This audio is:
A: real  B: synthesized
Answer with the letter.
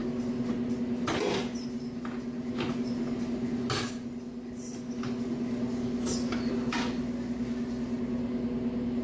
A